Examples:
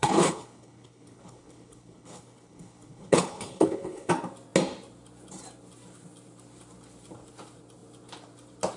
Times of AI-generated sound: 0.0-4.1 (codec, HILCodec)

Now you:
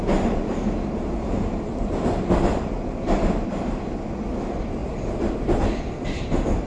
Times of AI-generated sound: none

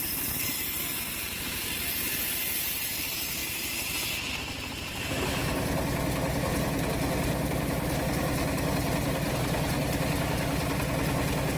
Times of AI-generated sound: none

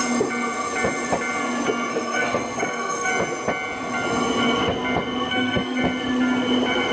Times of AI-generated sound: 1.9-3.1 (codec, SNAC); 5.3-5.8

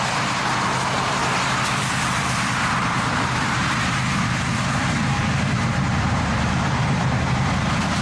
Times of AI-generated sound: 0.0-1.2 (vocoder, BigVGAN v2); 1.8-8.0

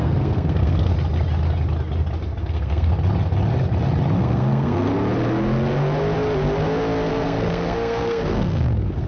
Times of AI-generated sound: 0.0-0.9 (codec, SNAC); 2.4-2.9; 4.2-4.9; 7.1-9.1

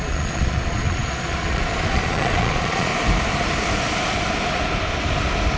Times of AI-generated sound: 0.0-2.9 (vocoder, Vocos)